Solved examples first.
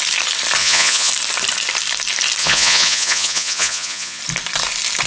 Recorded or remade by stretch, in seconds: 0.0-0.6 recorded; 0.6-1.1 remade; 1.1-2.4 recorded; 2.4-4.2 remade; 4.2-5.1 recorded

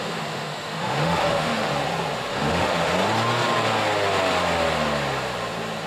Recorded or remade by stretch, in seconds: 0.0-1.7 remade; 1.7-2.3 recorded; 2.3-2.9 remade; 2.9-5.9 recorded

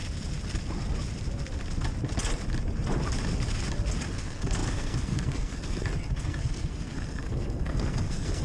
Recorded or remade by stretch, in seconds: 0.0-4.1 recorded; 4.1-8.4 remade

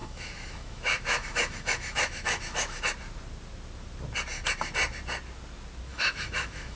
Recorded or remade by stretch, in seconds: 0.0-2.8 remade; 2.8-5.9 recorded; 5.9-6.8 remade

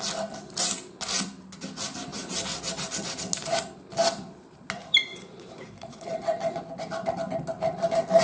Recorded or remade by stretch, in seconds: 0.0-5.1 recorded; 5.1-6.6 remade; 6.6-8.2 recorded

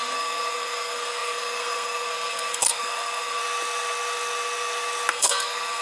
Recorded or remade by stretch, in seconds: 0.0-3.4 remade; 3.4-5.1 recorded; 5.1-5.8 remade

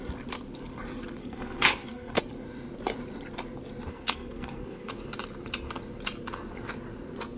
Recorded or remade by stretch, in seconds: 0.0-1.2 recorded; 1.2-2.2 remade; 2.2-3.9 recorded; 3.9-4.9 remade; 4.9-7.4 recorded